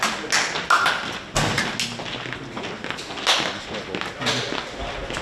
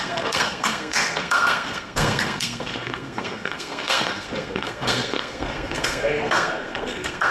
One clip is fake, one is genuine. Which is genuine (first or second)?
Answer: first